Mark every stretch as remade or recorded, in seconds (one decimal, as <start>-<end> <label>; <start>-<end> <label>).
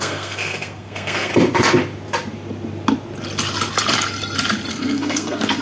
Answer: 0.0-1.3 remade; 1.3-4.7 recorded; 4.7-5.6 remade